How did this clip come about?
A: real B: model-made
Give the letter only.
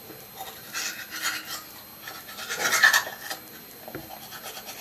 A